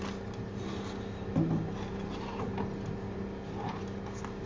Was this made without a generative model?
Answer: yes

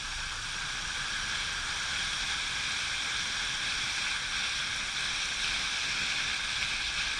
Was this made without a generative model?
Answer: yes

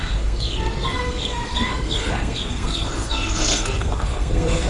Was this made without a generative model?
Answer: no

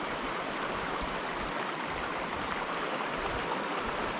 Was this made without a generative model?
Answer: yes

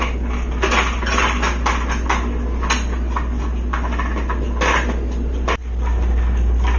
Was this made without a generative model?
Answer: yes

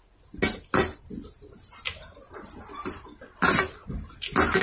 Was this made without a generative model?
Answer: yes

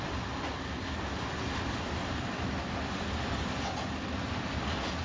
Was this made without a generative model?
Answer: yes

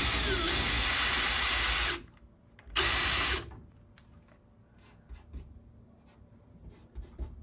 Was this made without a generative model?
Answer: yes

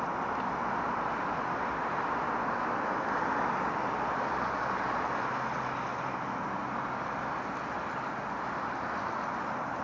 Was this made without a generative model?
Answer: yes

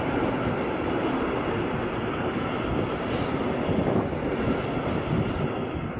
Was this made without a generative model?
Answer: yes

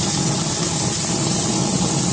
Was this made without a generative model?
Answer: yes